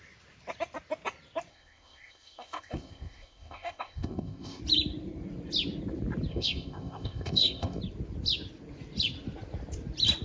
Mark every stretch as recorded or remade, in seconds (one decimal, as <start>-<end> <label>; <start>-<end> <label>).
0.0-1.5 recorded; 1.5-4.6 remade; 4.6-6.3 recorded; 6.3-7.8 remade; 7.8-10.2 recorded